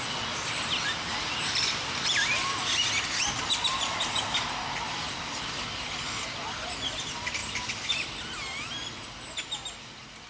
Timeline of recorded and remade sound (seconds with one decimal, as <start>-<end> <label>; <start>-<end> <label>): 0.0-1.1 recorded; 1.1-2.8 remade; 2.8-7.4 recorded; 7.4-8.8 remade; 8.8-10.3 recorded

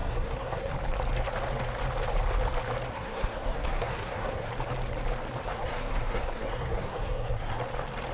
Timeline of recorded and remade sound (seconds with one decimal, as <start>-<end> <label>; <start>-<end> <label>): 0.0-0.7 remade; 0.7-2.9 recorded; 2.9-4.5 remade; 4.5-5.4 recorded; 5.4-7.6 remade; 7.6-8.1 recorded